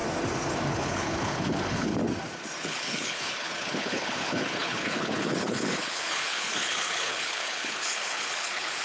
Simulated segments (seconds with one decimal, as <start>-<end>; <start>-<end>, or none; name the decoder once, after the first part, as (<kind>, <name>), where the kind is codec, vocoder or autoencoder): 0.7-1.9 (codec, HILCodec); 2.6-8.8